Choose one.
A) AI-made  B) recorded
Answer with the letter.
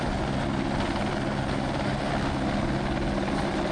B